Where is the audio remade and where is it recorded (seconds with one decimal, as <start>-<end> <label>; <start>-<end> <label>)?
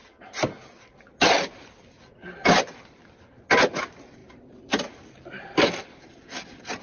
0.0-6.8 recorded